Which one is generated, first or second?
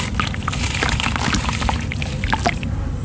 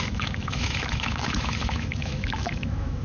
second